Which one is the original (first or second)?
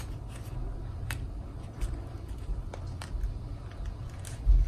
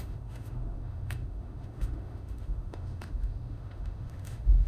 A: first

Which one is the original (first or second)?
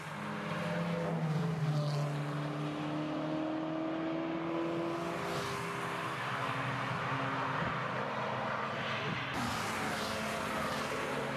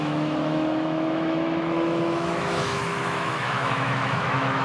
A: first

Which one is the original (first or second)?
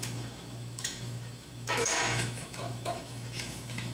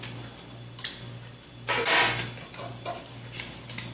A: second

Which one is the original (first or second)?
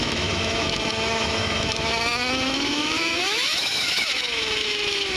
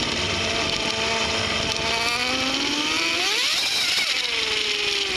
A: second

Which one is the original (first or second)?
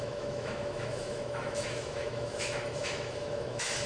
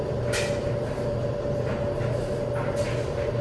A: second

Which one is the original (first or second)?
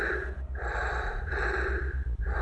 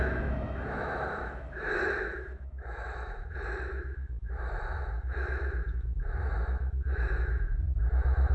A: first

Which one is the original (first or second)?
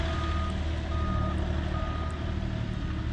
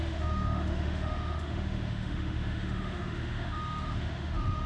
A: first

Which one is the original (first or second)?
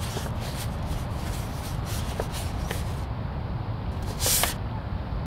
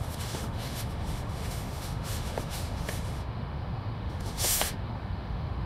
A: first